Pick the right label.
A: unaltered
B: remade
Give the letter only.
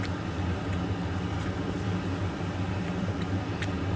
A